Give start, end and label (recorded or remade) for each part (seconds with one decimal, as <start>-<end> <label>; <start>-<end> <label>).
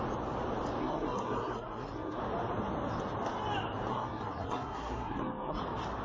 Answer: 0.0-0.8 recorded; 0.8-2.2 remade; 2.2-3.9 recorded; 3.9-5.6 remade; 5.6-6.0 recorded